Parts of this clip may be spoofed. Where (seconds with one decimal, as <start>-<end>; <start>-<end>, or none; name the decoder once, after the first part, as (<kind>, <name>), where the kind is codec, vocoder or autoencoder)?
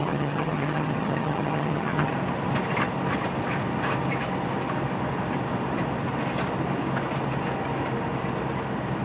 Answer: 0.0-2.1 (vocoder, HiFi-GAN)